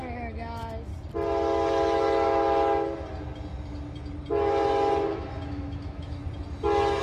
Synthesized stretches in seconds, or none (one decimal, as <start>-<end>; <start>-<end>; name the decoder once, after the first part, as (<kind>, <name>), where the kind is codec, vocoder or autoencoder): 0.0-0.9 (autoencoder, DAC-VAE); 5.1-6.2